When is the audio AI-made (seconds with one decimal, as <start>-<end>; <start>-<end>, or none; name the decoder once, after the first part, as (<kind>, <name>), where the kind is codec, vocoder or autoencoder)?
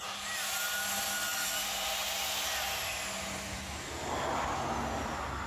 none